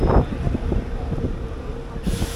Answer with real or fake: real